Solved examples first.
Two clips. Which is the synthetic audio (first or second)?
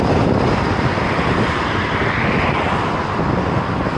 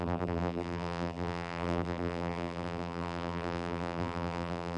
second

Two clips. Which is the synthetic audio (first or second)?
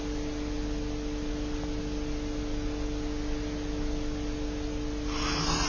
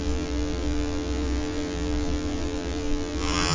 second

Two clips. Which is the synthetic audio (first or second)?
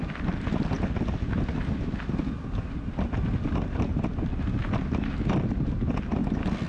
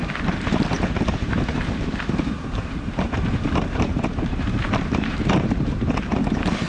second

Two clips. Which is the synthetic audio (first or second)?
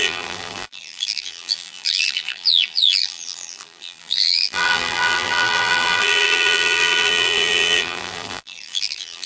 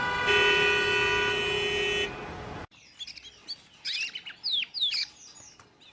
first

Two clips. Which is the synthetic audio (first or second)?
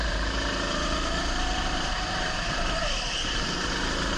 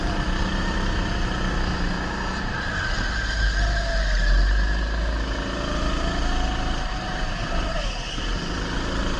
first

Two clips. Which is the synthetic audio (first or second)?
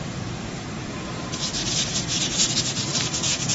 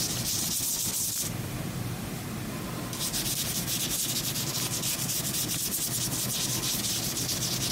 first